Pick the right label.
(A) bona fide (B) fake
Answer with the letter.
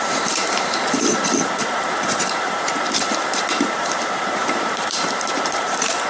B